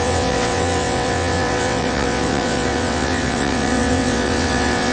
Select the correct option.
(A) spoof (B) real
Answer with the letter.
A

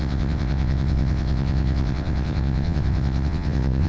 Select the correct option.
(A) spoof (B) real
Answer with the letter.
A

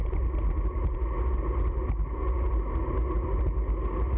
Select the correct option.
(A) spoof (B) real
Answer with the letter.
B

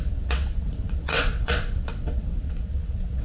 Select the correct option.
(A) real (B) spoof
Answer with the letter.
B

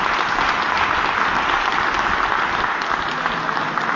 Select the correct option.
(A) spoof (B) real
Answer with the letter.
B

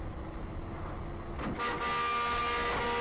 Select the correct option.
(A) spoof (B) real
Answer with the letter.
B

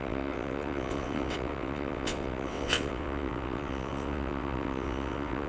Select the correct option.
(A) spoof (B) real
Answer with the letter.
A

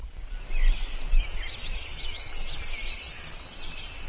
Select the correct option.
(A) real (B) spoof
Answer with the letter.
A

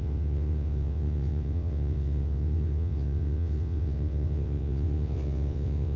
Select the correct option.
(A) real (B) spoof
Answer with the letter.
B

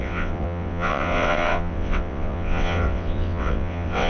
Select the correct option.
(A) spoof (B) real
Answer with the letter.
A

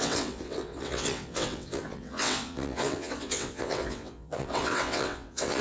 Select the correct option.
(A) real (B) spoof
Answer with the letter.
B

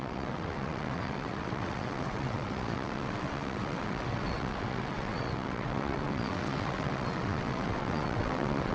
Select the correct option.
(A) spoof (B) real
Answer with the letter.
A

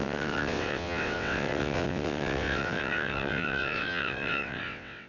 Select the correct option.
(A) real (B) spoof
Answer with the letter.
B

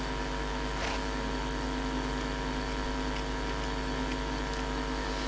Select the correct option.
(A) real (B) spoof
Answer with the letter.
A